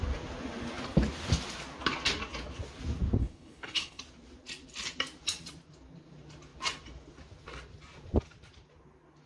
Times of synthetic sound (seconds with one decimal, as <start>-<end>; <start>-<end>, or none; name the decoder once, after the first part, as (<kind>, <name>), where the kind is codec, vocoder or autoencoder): 3.2-4.0 (codec, HILCodec)